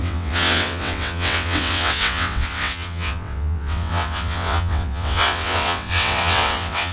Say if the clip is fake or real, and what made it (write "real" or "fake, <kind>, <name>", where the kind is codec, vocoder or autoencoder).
fake, vocoder, WaveNeXt